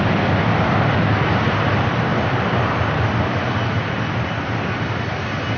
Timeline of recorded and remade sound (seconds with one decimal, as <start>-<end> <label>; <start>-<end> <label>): 0.0-2.1 remade; 2.1-5.6 recorded